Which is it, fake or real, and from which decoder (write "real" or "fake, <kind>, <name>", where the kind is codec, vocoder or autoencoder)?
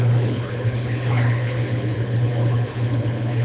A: fake, codec, HILCodec